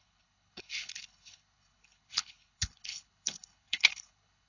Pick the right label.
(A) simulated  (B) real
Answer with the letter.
A